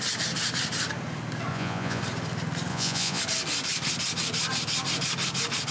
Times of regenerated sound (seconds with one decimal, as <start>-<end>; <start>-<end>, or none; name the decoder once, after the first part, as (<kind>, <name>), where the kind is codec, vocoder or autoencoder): 1.5-2.0 (vocoder, Vocos); 2.7-3.2